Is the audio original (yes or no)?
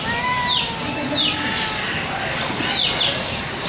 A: yes